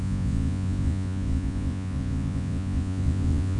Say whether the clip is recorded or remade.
remade